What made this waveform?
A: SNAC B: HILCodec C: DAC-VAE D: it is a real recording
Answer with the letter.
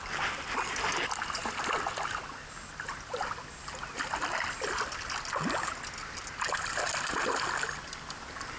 D